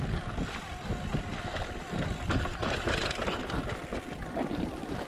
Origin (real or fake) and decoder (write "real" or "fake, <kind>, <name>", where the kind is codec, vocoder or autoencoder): fake, vocoder, BigVGAN v2